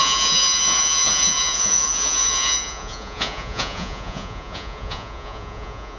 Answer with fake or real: fake